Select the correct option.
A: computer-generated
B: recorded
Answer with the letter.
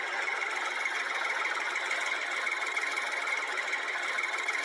B